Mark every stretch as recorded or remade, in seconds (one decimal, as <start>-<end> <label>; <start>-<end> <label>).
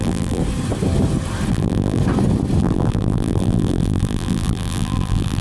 0.0-0.4 remade; 0.4-1.5 recorded; 1.5-2.0 remade; 2.0-2.6 recorded; 2.6-5.4 remade